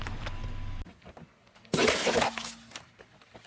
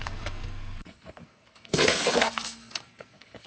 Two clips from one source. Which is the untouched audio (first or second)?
first